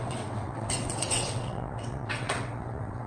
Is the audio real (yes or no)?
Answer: no